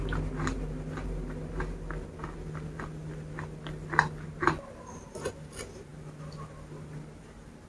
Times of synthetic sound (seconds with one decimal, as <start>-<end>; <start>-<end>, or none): none